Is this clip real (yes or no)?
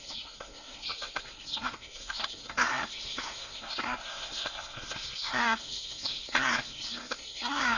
no